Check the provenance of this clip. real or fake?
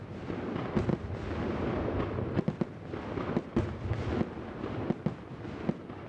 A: real